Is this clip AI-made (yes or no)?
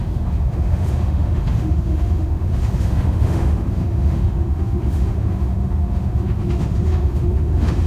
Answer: yes